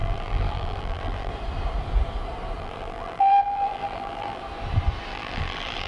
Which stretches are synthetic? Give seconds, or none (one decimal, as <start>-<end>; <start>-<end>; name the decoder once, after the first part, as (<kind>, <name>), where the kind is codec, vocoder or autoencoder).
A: 0.0-1.3 (vocoder, BigVGAN v2); 2.6-4.4; 5.1-5.9